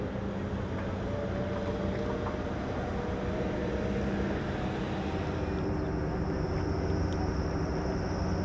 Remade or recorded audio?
recorded